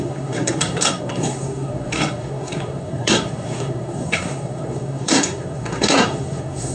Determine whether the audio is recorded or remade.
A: remade